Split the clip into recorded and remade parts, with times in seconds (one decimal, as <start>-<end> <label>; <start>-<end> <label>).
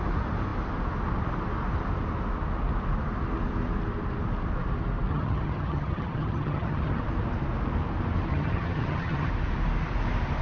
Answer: 0.0-5.1 recorded; 5.1-7.0 remade; 7.0-8.3 recorded; 8.3-9.3 remade; 9.3-10.4 recorded